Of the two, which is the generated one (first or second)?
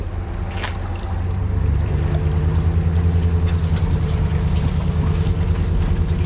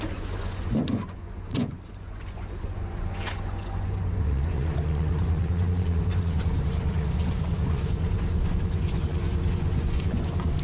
second